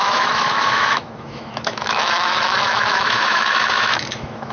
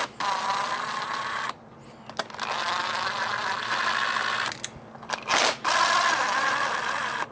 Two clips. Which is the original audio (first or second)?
second